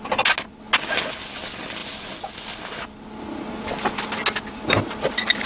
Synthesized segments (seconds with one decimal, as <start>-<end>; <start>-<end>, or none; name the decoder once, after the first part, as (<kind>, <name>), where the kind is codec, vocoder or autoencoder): none